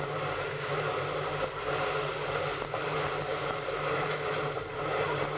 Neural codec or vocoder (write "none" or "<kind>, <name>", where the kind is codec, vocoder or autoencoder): none